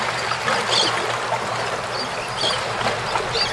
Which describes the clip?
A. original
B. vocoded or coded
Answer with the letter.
A